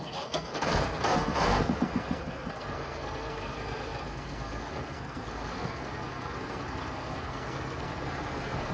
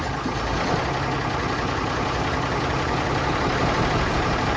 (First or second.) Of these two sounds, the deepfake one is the first